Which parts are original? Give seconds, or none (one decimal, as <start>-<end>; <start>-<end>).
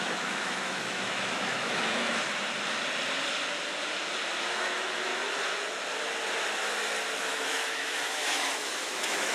2.2-4.5; 5.1-7.2